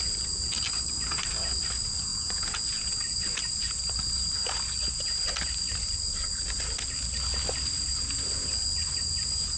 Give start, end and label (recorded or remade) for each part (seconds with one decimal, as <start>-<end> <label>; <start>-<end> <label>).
0.0-2.1 recorded; 2.1-2.9 remade; 2.9-9.6 recorded